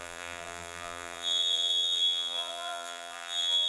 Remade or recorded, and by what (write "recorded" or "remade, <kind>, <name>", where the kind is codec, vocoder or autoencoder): remade, vocoder, BigVGAN v2